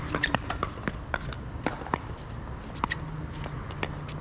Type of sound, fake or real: real